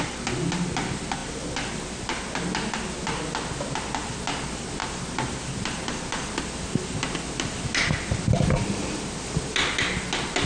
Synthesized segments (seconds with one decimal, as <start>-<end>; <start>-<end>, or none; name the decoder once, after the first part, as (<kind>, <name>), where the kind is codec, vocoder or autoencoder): none